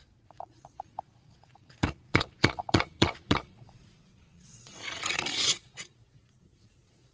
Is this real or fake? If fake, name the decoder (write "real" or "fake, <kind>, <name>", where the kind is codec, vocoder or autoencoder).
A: fake, vocoder, Vocos